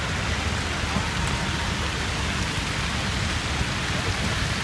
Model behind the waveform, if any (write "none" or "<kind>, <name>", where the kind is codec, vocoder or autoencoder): none